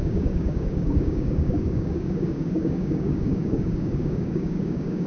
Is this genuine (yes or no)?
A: no